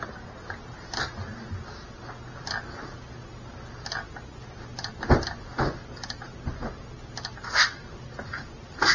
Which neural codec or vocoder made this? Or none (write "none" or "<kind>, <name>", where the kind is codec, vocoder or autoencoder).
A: none